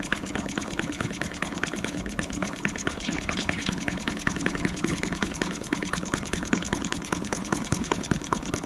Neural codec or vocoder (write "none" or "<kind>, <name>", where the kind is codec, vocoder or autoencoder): codec, HILCodec